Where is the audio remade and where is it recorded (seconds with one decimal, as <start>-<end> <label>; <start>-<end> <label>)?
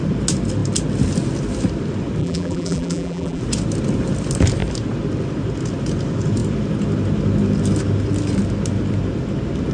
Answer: 0.0-2.2 recorded; 2.2-3.4 remade; 3.4-9.7 recorded